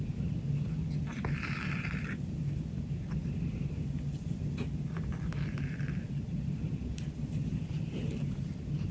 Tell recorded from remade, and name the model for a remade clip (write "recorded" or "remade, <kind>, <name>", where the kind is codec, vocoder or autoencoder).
recorded